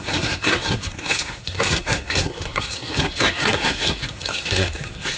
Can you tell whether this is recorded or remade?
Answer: remade